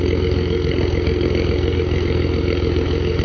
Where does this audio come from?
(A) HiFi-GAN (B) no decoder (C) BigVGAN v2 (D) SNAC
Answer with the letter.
D